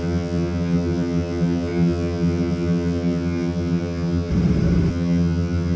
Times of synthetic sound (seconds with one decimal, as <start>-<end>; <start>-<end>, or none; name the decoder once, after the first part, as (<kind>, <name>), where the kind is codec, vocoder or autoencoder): 0.0-4.3 (vocoder, HiFi-GAN); 4.9-5.8